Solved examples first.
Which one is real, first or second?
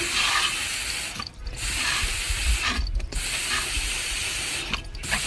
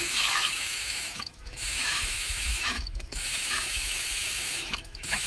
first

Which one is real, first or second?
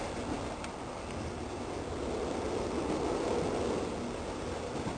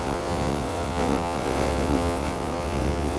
first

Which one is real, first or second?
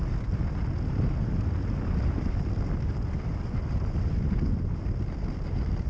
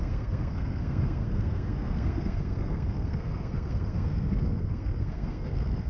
first